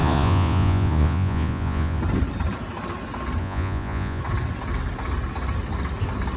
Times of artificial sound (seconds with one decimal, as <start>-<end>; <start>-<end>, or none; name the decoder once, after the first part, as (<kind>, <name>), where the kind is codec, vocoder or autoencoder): 0.0-2.0 (vocoder, Vocos); 3.4-4.2